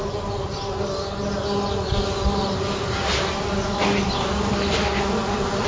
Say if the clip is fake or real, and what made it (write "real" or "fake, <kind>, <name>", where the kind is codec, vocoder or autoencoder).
real